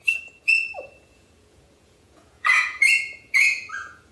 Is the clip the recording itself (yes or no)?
no